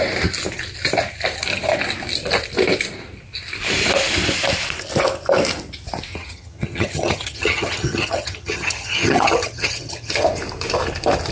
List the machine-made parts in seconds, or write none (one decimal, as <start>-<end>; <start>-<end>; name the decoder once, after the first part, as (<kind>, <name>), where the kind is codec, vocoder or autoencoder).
6.1-10.1 (vocoder, HiFi-GAN)